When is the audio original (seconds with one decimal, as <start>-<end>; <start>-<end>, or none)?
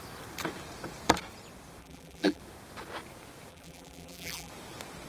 0.0-1.8; 2.4-3.5; 4.5-5.1